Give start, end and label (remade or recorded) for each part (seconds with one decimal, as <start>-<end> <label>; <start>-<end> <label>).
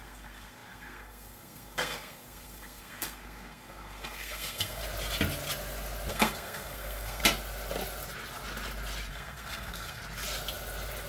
0.0-4.8 remade; 4.8-6.1 recorded; 6.1-7.2 remade; 7.2-9.1 recorded; 9.1-10.0 remade; 10.0-11.1 recorded